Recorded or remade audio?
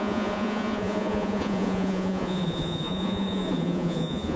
remade